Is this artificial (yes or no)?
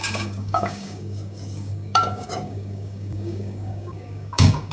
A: yes